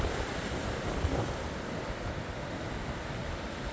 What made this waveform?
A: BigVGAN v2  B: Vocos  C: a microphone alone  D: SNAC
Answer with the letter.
C